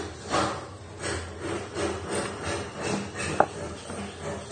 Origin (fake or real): real